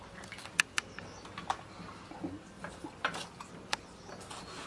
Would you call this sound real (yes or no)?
yes